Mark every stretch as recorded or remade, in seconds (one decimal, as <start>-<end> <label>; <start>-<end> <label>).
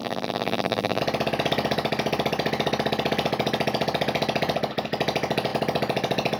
0.0-1.0 remade; 1.0-6.4 recorded